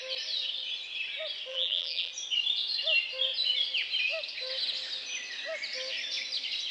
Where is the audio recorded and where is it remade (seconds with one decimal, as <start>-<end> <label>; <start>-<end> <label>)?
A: 0.0-1.5 recorded; 1.5-2.1 remade; 2.1-6.7 recorded